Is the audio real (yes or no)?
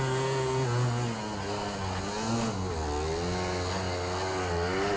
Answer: yes